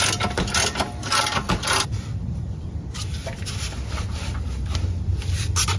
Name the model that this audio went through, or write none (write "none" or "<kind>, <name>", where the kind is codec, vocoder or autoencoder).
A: none